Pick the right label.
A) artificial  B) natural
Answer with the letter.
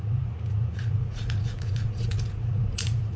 A